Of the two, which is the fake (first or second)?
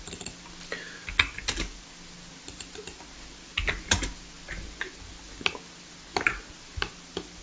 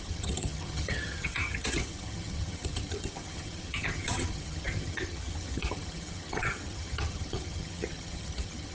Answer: second